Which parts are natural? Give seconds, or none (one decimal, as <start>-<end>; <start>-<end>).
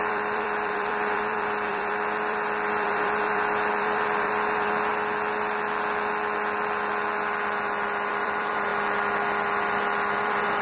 4.9-8.1; 8.7-10.2